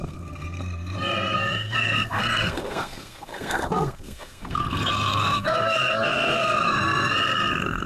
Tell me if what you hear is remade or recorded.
remade